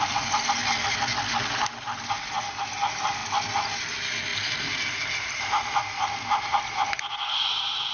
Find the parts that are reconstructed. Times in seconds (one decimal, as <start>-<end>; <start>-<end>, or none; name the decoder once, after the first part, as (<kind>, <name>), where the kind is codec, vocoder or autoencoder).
none